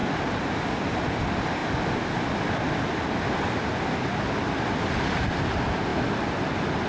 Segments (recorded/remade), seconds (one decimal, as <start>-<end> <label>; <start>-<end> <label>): 0.0-6.9 recorded